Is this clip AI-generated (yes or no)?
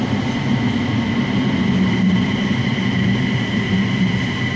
no